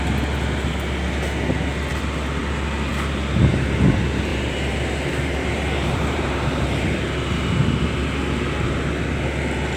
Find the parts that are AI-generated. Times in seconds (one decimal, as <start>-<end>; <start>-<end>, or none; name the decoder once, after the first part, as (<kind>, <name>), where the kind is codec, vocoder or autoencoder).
4.3-7.0 (vocoder, BigVGAN v2)